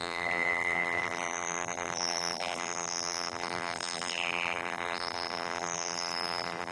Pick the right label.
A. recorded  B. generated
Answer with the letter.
B